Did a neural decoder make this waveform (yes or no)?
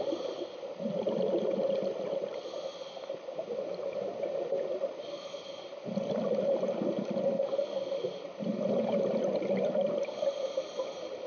no